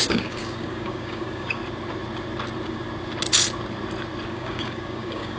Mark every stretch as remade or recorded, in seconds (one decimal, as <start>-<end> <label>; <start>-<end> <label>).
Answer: 0.0-1.6 remade; 1.6-4.3 recorded; 4.3-5.4 remade